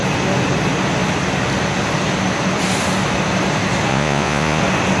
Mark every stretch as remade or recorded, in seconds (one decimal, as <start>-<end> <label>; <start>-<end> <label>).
0.0-3.9 recorded; 3.9-4.6 remade; 4.6-5.0 recorded